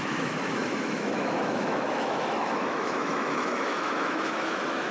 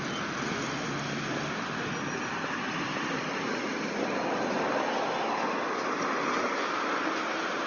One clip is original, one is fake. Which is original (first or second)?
second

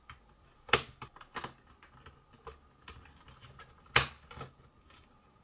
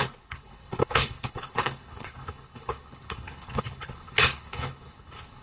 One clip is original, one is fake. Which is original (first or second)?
first